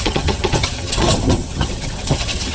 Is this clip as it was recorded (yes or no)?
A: no